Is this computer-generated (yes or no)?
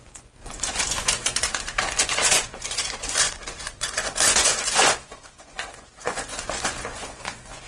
yes